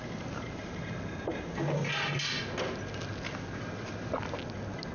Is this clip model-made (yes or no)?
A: no